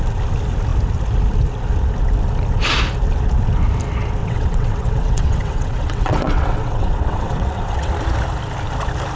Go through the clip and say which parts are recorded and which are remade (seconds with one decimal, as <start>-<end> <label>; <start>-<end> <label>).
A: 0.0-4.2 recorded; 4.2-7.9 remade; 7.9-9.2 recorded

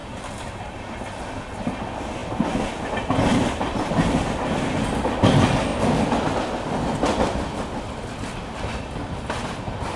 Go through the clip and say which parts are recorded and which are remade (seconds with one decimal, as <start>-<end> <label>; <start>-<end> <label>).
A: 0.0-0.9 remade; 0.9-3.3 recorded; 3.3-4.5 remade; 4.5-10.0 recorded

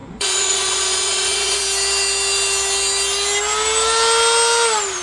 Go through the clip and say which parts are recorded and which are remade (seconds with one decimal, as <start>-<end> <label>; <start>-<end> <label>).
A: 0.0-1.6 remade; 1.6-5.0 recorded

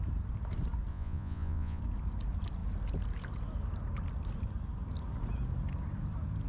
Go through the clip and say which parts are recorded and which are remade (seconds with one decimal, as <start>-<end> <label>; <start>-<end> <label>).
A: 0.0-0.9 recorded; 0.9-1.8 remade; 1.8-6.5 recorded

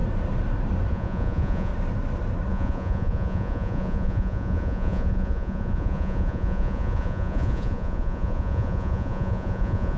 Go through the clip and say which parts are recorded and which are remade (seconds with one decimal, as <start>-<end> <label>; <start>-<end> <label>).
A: 0.0-0.9 recorded; 0.9-1.7 remade; 1.7-2.5 recorded; 2.5-10.0 remade

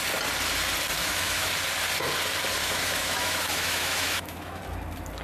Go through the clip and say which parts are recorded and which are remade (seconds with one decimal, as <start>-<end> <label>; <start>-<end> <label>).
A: 0.0-1.0 recorded; 1.0-1.5 remade; 1.5-2.6 recorded; 2.6-4.6 remade; 4.6-5.2 recorded

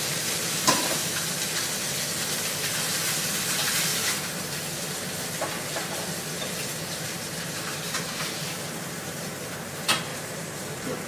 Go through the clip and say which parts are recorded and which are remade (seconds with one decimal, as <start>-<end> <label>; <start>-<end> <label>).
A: 0.0-1.0 remade; 1.0-2.5 recorded; 2.5-3.9 remade; 3.9-6.9 recorded; 6.9-11.1 remade